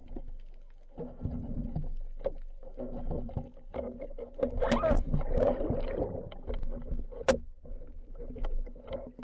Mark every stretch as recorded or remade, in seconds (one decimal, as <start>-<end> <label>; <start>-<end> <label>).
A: 0.0-9.2 recorded